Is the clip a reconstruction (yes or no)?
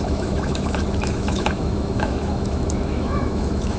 yes